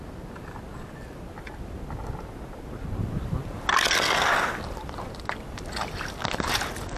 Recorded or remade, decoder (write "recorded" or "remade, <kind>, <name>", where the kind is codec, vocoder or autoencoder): recorded